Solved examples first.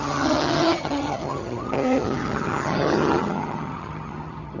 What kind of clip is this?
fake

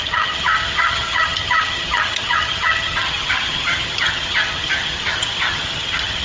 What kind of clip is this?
fake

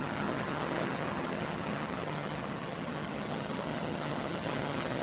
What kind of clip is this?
fake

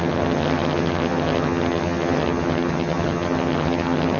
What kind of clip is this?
fake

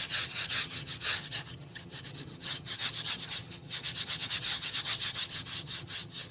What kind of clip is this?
fake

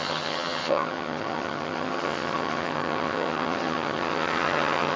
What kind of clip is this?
fake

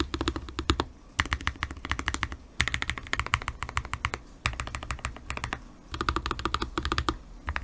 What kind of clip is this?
real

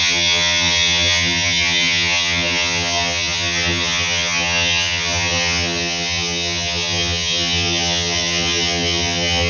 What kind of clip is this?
fake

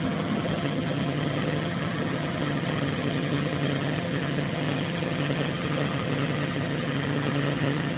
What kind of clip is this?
fake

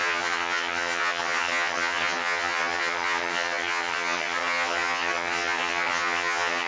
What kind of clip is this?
fake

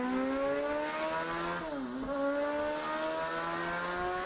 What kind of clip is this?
real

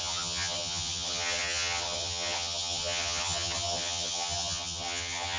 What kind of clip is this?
fake